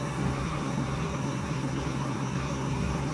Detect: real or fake fake